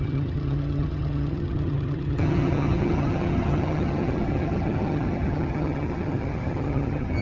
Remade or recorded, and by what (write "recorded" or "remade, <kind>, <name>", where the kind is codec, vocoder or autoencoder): remade, vocoder, HiFi-GAN